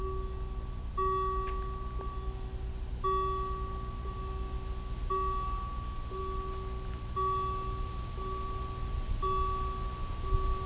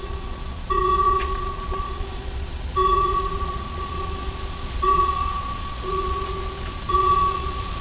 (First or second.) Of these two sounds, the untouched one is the first